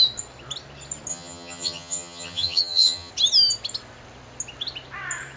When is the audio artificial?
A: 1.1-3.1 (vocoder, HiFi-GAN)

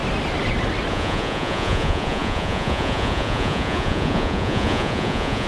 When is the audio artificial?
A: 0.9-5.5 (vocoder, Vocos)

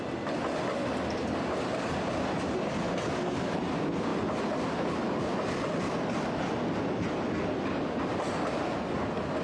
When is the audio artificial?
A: none

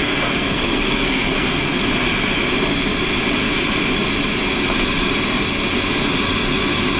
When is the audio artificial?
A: 0.0-1.8 (codec, SNAC)